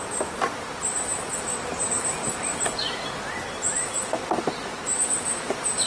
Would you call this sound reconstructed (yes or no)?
no